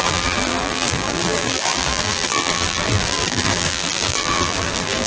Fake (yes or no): yes